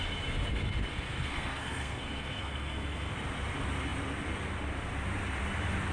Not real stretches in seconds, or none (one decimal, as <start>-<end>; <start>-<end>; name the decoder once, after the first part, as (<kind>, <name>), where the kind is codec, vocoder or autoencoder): 0.9-3.1 (codec, SNAC)